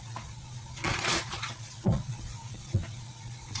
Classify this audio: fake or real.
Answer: fake